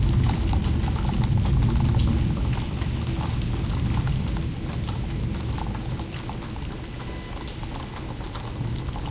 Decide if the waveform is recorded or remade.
recorded